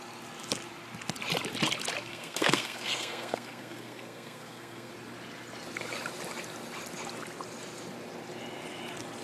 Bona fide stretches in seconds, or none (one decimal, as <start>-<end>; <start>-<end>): 0.0-2.1; 4.9-9.2

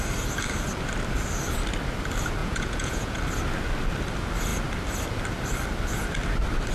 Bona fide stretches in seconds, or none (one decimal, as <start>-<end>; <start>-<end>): 0.0-2.4; 3.2-6.7